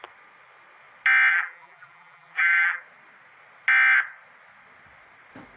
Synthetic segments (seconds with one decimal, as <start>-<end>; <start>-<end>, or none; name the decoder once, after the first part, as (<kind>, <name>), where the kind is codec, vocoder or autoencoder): 1.3-2.8 (vocoder, BigVGAN v2)